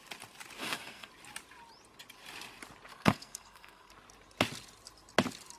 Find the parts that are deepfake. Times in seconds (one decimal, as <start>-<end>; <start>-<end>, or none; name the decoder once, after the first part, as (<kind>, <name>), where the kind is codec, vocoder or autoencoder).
0.6-1.1 (codec, SNAC); 2.9-3.9